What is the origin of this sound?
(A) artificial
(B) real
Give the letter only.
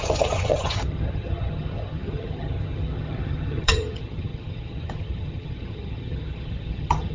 A